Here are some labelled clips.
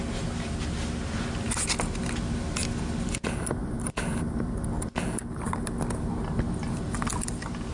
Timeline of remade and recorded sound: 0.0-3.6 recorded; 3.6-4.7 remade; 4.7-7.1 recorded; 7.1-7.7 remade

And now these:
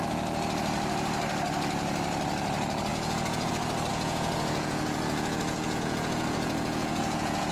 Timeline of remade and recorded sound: 0.0-2.9 recorded; 2.9-3.5 remade; 3.5-3.9 recorded; 3.9-7.5 remade

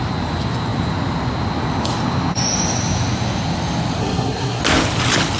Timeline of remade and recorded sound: 0.0-4.0 recorded; 4.0-4.6 remade; 4.6-5.4 recorded